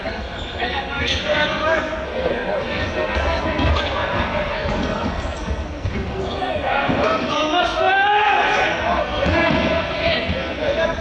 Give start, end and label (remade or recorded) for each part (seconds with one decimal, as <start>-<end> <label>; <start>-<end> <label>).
0.0-11.0 remade